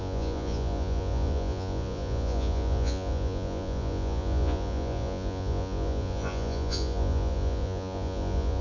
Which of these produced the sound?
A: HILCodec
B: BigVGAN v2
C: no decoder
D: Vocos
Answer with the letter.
D